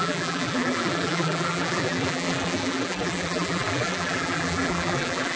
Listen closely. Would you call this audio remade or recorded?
remade